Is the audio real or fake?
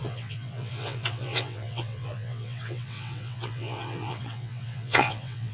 fake